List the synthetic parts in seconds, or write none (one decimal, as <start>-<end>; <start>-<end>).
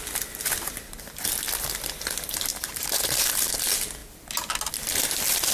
2.5-3.5